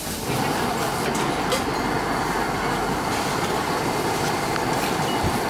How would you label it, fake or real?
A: real